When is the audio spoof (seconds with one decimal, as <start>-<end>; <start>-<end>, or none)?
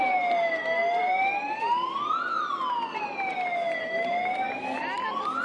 none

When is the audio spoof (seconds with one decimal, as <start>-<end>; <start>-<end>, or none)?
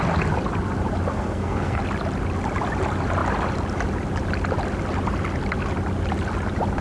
1.1-1.8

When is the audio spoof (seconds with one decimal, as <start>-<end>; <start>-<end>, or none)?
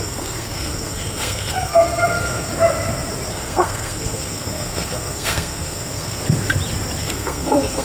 0.0-2.5; 3.3-6.2; 7.0-7.8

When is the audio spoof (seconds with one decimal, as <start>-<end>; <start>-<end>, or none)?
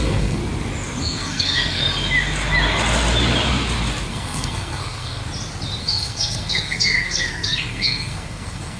0.0-0.4; 1.0-1.8; 4.1-5.2; 5.8-8.8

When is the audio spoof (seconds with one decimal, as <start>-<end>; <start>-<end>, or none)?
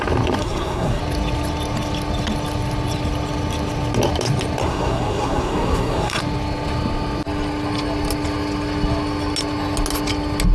0.4-1.0; 4.6-6.2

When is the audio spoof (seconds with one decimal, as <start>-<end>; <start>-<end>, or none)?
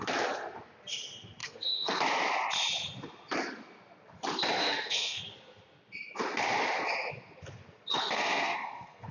1.4-2.0; 4.6-5.2; 8.0-9.1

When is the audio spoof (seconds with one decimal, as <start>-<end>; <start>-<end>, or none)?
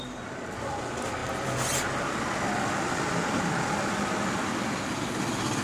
none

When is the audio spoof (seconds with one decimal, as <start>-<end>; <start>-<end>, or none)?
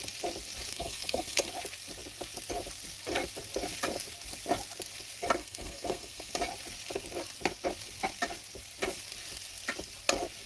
0.7-1.5; 5.4-6.3